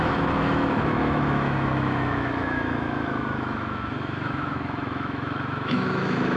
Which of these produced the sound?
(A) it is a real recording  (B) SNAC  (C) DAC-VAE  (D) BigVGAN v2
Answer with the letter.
C